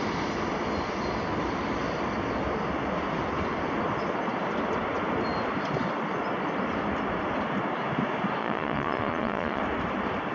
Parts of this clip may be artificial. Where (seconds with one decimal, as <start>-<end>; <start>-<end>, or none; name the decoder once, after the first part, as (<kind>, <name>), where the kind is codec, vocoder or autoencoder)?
8.4-9.6 (vocoder, Vocos)